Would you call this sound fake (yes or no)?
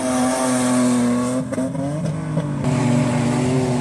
no